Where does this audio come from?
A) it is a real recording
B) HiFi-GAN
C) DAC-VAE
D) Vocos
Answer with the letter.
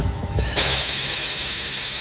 C